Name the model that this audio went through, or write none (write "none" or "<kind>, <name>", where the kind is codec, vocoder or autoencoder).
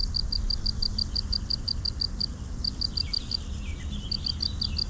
none